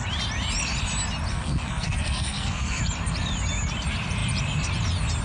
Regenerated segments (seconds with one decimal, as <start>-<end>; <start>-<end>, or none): 1.3-2.8